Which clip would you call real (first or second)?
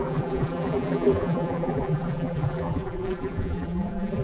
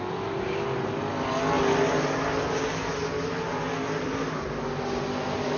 second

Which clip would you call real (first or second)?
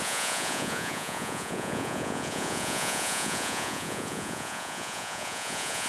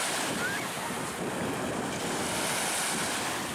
second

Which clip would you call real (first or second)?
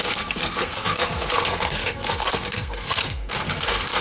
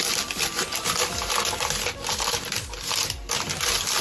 second